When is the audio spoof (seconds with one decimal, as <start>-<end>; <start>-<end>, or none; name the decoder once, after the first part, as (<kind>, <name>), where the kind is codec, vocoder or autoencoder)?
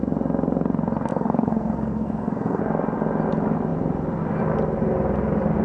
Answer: 1.1-2.6 (codec, SNAC)